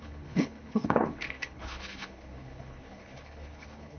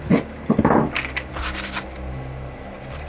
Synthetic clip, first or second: first